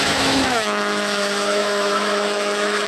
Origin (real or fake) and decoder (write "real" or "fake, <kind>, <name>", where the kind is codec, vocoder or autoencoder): fake, autoencoder, DAC-VAE